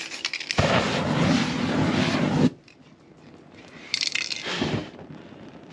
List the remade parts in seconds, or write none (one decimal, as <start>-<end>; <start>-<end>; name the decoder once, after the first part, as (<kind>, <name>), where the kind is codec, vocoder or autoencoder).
4.8-5.7 (vocoder, BigVGAN v2)